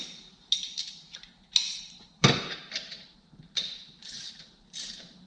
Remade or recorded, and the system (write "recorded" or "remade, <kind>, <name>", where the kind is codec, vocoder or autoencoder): remade, vocoder, BigVGAN v2